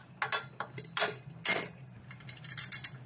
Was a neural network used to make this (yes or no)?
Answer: no